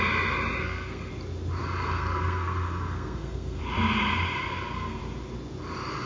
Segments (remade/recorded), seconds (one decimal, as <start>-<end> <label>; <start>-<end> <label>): 0.0-0.6 recorded; 0.6-1.1 remade; 1.1-1.6 recorded; 1.6-3.6 remade; 3.6-4.4 recorded; 4.4-5.0 remade; 5.0-6.1 recorded